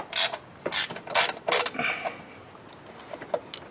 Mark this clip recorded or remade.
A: recorded